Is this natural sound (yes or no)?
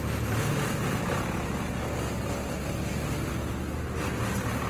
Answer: yes